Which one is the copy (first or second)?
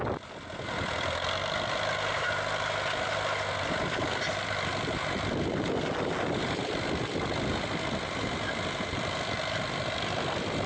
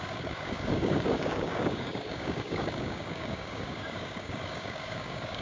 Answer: second